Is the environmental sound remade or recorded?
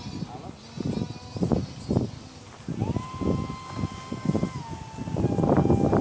recorded